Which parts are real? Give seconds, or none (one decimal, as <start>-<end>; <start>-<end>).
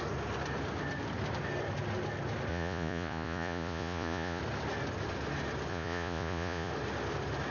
0.0-2.5; 4.4-5.7; 6.7-7.5